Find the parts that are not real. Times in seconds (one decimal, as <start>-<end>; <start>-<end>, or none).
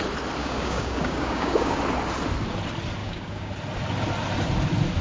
0.4-1.8; 3.0-3.5